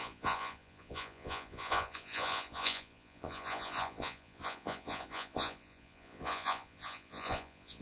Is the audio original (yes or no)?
no